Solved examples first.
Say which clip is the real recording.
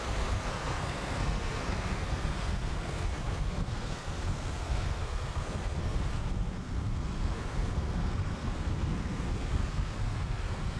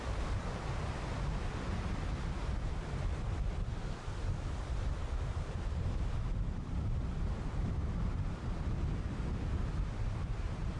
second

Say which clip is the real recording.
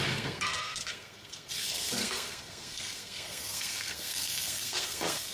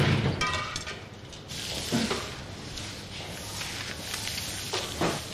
second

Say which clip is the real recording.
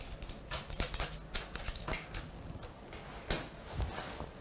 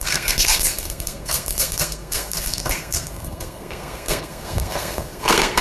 first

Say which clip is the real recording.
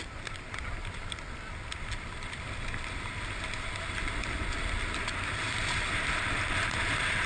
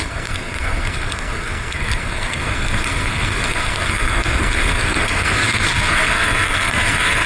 first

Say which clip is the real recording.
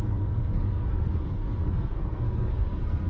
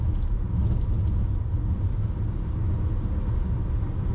second